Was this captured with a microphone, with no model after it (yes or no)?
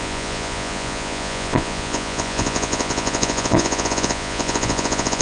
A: no